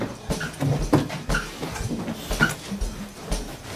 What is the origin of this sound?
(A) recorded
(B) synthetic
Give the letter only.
A